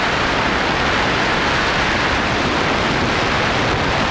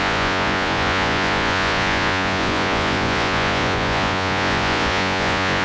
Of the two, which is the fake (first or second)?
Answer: second